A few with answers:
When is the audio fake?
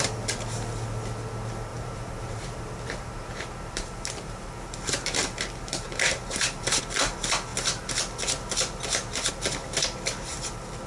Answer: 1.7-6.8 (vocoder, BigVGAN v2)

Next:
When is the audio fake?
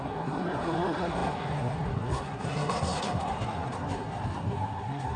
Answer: 0.0-5.2 (codec, SNAC)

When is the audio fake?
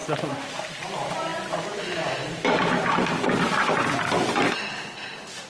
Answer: none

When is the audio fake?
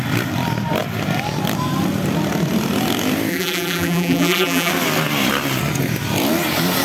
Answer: 3.3-4.7 (vocoder, BigVGAN v2)